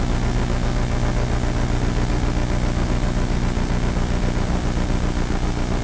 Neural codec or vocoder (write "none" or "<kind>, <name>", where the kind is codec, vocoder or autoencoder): none